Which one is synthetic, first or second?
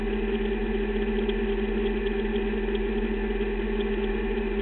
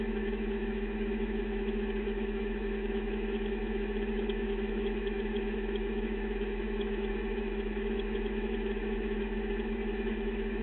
second